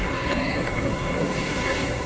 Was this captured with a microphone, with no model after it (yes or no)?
no